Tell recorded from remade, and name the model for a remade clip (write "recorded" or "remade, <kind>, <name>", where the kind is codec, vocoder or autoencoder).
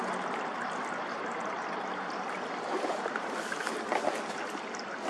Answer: recorded